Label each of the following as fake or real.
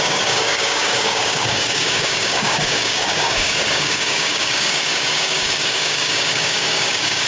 fake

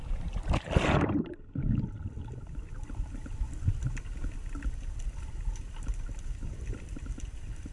real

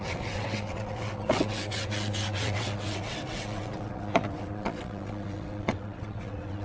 fake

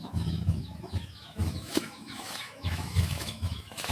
fake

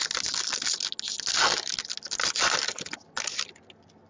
real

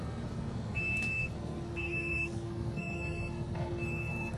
fake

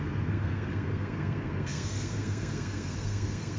fake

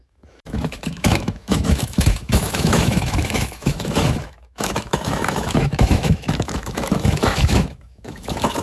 fake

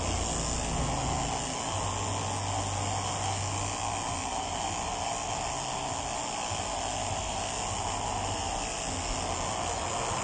real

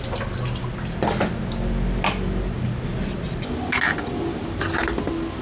real